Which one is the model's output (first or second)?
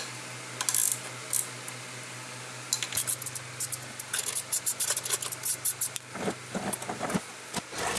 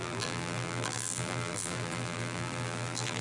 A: second